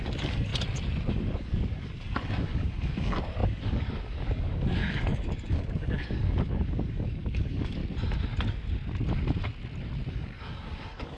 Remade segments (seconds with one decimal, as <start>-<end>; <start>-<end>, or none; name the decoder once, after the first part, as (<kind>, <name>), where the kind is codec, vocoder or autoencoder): 0.0-0.5 (codec, DAC); 1.1-7.8; 10.1-11.2

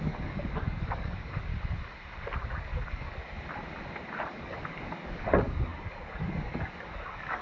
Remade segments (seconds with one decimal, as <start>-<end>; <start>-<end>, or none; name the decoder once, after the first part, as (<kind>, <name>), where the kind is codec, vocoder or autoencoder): 0.0-1.5 (codec, DAC); 2.5-3.2; 4.3-7.4

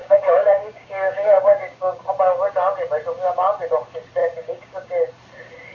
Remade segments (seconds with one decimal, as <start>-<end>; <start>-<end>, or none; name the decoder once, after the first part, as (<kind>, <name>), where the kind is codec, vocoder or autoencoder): 0.0-2.0 (codec, DAC); 4.2-5.1